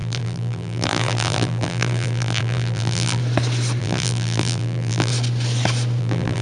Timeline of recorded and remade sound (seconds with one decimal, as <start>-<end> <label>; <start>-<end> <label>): 0.0-3.2 remade; 3.2-3.8 recorded; 3.8-5.1 remade; 5.1-6.0 recorded; 6.0-6.4 remade